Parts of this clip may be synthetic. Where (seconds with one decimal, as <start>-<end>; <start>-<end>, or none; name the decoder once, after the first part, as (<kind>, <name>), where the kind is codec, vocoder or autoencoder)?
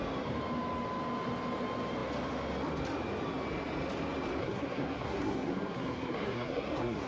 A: 4.4-7.1 (codec, SNAC)